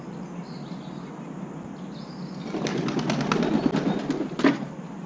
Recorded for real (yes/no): yes